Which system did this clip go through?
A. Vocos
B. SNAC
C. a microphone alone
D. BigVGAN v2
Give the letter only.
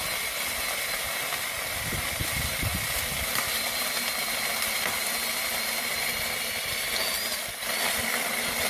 C